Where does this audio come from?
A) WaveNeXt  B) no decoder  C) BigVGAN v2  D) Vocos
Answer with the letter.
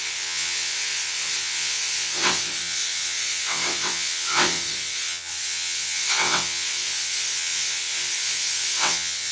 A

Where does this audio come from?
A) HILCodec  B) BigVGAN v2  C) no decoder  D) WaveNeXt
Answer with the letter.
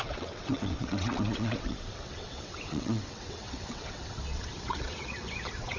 D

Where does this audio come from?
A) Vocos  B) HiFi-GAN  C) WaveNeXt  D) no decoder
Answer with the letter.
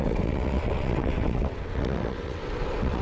C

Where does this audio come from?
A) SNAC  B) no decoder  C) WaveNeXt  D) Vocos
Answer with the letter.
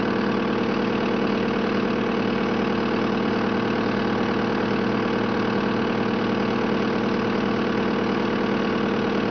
B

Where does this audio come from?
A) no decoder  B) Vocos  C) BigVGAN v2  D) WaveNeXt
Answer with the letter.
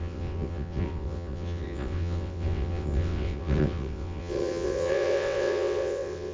D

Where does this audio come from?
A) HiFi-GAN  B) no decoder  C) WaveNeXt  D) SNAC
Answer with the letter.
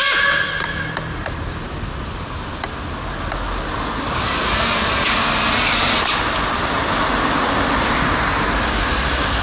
B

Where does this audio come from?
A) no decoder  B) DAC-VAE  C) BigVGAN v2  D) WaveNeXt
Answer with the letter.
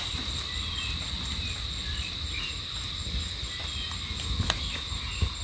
A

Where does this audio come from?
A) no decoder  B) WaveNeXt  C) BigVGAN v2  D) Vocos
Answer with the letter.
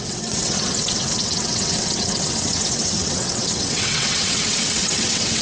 B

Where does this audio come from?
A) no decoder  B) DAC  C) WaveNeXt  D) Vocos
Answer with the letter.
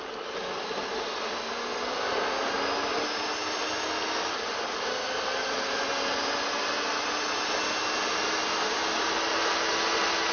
A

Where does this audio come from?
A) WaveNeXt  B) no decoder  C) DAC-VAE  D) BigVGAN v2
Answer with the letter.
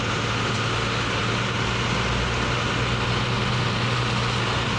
B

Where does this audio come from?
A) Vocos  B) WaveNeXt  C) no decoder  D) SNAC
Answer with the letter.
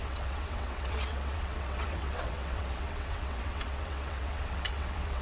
B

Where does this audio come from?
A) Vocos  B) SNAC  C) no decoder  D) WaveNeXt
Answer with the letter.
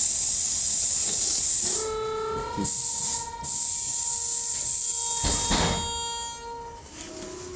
C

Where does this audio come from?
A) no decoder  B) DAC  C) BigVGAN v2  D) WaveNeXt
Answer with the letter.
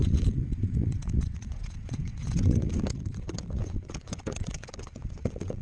D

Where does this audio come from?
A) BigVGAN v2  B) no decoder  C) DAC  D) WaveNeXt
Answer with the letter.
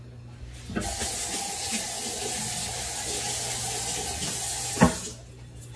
B